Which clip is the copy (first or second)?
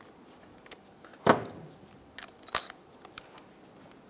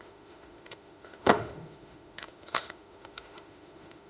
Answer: second